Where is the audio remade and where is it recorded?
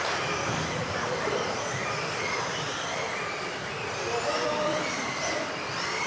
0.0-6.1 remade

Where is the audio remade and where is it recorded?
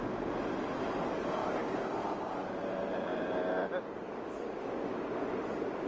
0.0-1.4 recorded; 1.4-2.6 remade; 2.6-5.9 recorded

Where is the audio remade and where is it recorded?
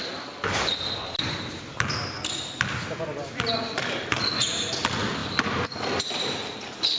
0.0-0.7 recorded; 0.7-1.7 remade; 1.7-3.3 recorded; 3.3-7.0 remade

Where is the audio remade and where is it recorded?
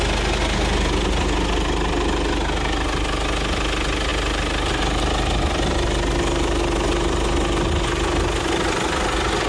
0.0-4.1 recorded; 4.1-7.7 remade; 7.7-9.5 recorded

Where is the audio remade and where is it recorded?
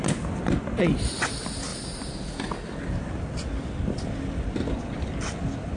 0.0-5.8 recorded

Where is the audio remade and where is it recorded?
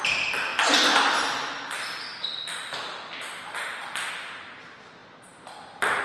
0.0-6.0 recorded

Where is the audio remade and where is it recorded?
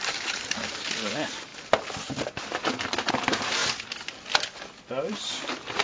0.0-1.5 remade; 1.5-3.1 recorded; 3.1-3.6 remade; 3.6-5.1 recorded; 5.1-5.8 remade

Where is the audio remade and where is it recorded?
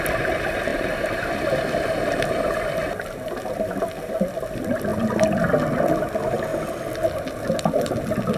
0.0-4.9 remade; 4.9-5.9 recorded; 5.9-6.5 remade; 6.5-7.8 recorded; 7.8-8.4 remade